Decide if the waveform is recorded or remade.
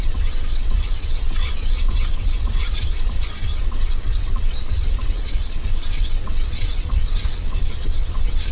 remade